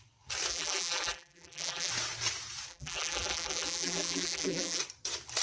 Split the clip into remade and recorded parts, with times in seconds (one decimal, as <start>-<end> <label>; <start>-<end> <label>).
0.0-0.5 recorded; 0.5-1.9 remade; 1.9-2.7 recorded; 2.7-4.8 remade; 4.8-5.4 recorded